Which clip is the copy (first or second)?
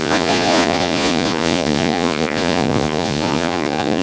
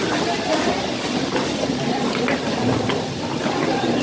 first